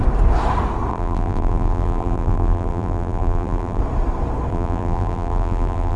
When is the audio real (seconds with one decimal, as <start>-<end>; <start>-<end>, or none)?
0.0-0.9; 3.8-4.5